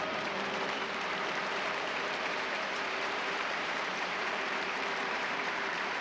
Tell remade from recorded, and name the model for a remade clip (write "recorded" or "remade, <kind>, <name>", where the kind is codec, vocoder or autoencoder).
remade, vocoder, BigVGAN v2